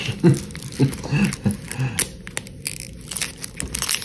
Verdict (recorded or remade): recorded